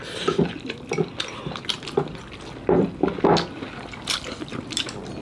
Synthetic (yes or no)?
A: no